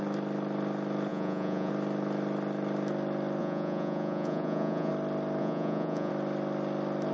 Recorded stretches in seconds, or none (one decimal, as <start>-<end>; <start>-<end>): 0.0-1.1; 1.7-3.4; 4.9-5.4; 6.1-7.1